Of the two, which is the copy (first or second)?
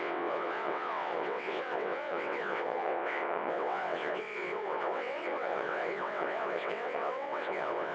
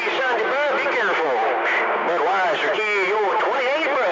first